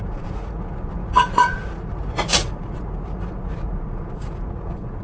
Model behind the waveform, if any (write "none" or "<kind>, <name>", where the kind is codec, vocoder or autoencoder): vocoder, Vocos